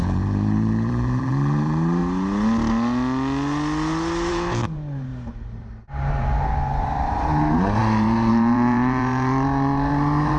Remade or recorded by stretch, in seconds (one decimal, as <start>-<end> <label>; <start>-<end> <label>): 0.0-2.0 remade; 2.0-4.3 recorded; 4.3-5.1 remade; 5.1-6.1 recorded; 6.1-10.4 remade